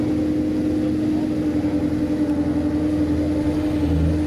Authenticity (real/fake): real